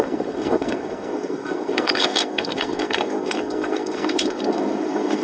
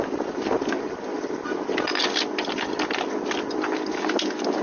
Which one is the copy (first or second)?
first